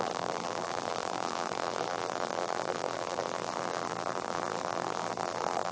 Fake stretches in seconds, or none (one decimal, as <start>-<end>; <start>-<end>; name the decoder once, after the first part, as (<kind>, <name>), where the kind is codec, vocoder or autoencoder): 0.0-5.7 (vocoder, BigVGAN v2)